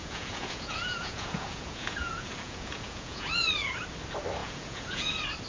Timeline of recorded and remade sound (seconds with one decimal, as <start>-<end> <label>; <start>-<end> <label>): 0.0-3.3 remade; 3.3-4.4 recorded; 4.4-5.1 remade; 5.1-5.5 recorded